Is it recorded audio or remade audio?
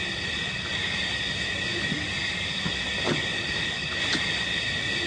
recorded